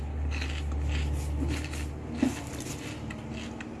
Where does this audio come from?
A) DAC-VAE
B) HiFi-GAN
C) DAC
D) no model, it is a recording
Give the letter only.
D